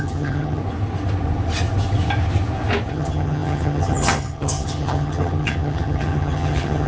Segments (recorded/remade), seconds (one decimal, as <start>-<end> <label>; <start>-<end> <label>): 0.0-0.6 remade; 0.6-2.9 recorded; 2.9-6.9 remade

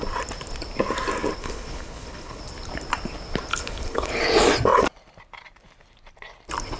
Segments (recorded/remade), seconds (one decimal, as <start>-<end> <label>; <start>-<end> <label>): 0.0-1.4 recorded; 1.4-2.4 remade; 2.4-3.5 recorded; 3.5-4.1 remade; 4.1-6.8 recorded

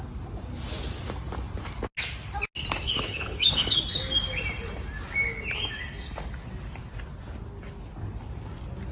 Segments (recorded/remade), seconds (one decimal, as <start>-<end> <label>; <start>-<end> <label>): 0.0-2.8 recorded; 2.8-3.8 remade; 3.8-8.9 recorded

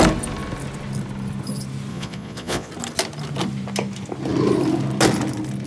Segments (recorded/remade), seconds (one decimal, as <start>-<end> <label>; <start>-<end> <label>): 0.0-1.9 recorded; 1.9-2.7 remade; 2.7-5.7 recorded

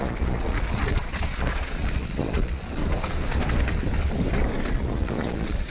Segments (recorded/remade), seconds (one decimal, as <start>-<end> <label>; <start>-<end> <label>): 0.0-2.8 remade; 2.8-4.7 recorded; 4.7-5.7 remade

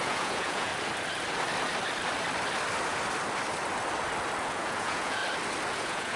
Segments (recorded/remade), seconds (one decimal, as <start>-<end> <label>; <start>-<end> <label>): 0.0-0.7 remade; 0.7-4.4 recorded; 4.4-5.2 remade; 5.2-5.7 recorded; 5.7-6.2 remade

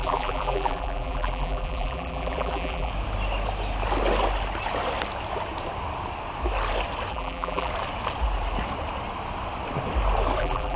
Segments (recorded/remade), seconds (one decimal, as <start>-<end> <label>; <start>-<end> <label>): 0.0-2.9 remade; 2.9-7.1 recorded; 7.1-7.7 remade; 7.7-10.4 recorded; 10.4-10.8 remade

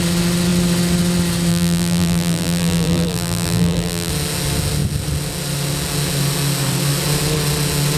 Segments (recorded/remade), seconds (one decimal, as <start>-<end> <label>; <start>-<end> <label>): 0.0-1.5 recorded; 1.5-4.1 remade; 4.1-8.0 recorded